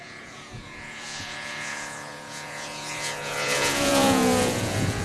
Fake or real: fake